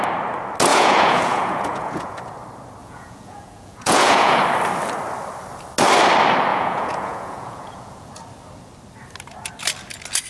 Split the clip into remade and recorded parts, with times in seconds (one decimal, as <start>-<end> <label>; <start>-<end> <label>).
0.0-0.7 recorded; 0.7-2.2 remade; 2.2-2.8 recorded; 2.8-4.4 remade; 4.4-6.5 recorded; 6.5-8.1 remade; 8.1-10.3 recorded